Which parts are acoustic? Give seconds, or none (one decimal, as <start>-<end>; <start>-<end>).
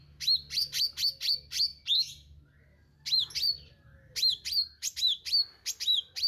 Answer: 0.0-6.3